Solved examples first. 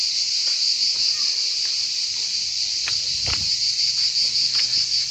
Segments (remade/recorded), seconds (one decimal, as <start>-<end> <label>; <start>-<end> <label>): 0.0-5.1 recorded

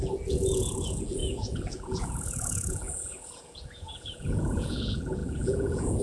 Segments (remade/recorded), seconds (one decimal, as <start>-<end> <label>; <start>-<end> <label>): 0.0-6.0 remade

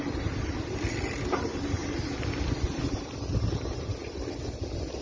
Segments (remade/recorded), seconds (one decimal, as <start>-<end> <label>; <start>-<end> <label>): 0.0-5.0 recorded

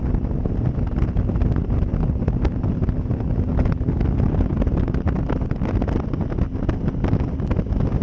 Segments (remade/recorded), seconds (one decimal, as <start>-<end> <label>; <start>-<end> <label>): 0.0-8.0 recorded